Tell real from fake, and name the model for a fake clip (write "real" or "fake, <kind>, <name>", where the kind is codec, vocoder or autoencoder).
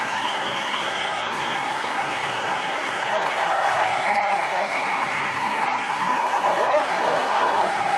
fake, codec, SNAC